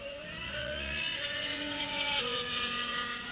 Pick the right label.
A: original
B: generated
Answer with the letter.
B